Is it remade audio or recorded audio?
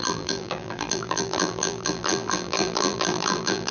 remade